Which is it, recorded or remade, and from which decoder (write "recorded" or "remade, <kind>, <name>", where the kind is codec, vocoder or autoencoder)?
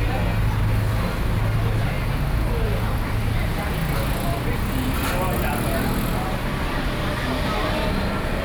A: recorded